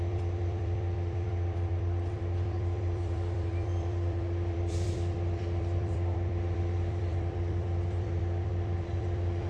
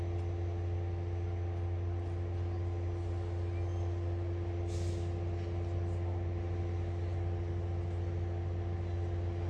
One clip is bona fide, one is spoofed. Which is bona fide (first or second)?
second